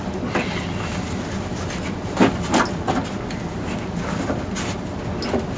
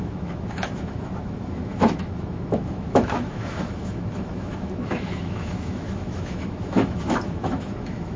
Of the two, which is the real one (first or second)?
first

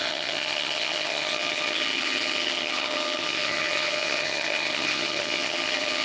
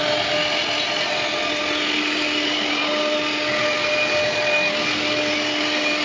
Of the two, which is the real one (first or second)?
second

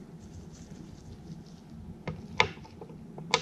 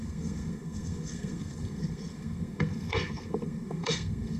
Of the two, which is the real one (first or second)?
first